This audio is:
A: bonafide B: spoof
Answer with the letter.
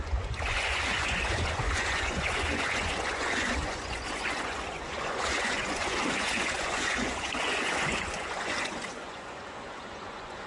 B